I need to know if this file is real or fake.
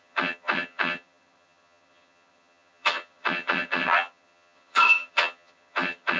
fake